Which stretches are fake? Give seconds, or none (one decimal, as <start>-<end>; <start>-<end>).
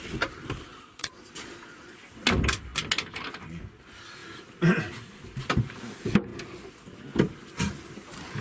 0.7-2.0